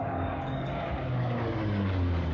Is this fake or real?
fake